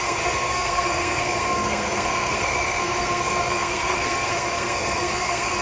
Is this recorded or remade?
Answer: remade